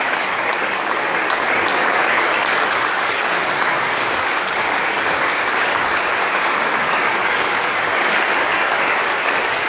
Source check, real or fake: fake